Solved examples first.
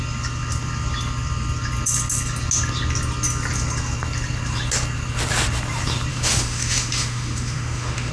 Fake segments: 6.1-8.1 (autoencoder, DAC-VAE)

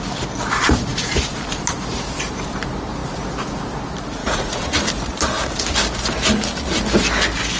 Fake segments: 4.2-4.9 (vocoder, Vocos)

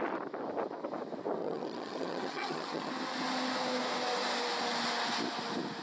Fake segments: 1.4-2.9 (vocoder, HiFi-GAN)

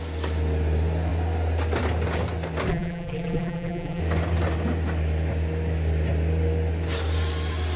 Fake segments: 2.7-4.0 (vocoder, BigVGAN v2)

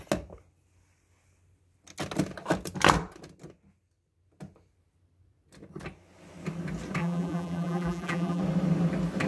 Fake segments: 7.0-8.4 (vocoder, BigVGAN v2)